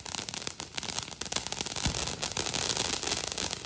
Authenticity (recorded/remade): recorded